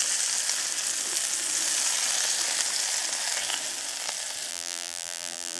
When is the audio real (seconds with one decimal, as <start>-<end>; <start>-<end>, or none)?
0.0-4.5